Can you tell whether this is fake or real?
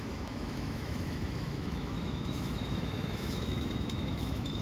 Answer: fake